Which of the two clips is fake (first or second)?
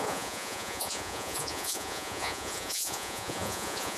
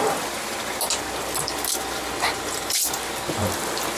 first